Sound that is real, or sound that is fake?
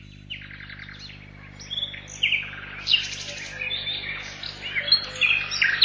real